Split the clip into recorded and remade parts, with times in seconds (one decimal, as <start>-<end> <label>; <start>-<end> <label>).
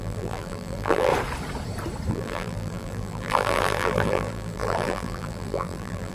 0.0-1.1 remade; 1.1-2.1 recorded; 2.1-6.1 remade